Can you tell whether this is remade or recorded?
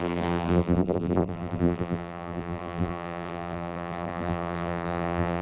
remade